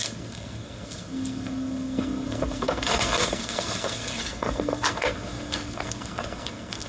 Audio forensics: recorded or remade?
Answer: remade